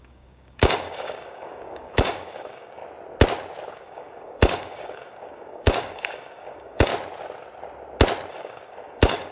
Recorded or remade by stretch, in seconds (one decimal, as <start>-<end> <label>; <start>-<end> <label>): 0.0-2.8 remade; 2.8-3.7 recorded; 3.7-6.9 remade; 6.9-8.3 recorded; 8.3-9.3 remade